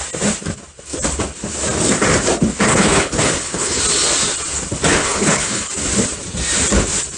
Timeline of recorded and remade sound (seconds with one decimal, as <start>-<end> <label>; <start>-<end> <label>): 0.0-2.7 recorded; 2.7-3.8 remade; 3.8-4.9 recorded; 4.9-5.7 remade; 5.7-7.2 recorded